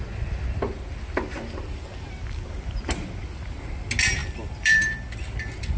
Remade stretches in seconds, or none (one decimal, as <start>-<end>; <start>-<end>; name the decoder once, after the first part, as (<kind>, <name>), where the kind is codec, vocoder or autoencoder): 4.2-5.8 (vocoder, BigVGAN v2)

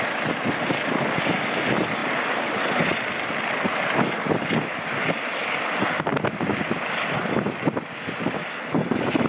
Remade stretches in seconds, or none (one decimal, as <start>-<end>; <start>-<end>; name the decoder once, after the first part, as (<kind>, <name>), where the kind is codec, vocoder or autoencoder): 2.0-3.7 (vocoder, BigVGAN v2)

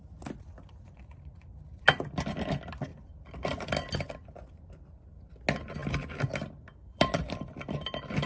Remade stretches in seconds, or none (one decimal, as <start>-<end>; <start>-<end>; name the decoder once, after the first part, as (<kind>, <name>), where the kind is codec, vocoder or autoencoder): 2.9-3.5 (vocoder, BigVGAN v2); 5.8-7.6

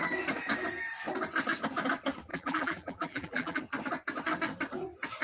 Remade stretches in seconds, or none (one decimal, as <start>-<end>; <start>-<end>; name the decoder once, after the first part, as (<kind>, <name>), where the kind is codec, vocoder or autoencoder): 2.3-3.6 (vocoder, BigVGAN v2)

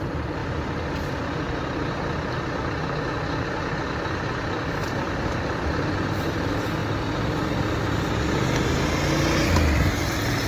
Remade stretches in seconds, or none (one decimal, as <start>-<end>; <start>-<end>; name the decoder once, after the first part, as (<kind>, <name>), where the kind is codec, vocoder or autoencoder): none

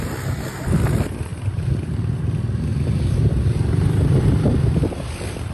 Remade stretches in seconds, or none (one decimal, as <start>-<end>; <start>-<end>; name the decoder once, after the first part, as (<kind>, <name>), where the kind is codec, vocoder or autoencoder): 1.3-2.2 (vocoder, BigVGAN v2); 2.7-5.5